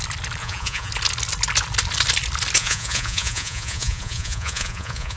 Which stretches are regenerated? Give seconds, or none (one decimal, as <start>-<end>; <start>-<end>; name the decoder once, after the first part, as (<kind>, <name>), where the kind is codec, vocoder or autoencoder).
0.4-0.9 (vocoder, Vocos); 2.6-5.2